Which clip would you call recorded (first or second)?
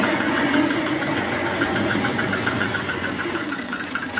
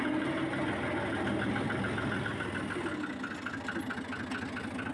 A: second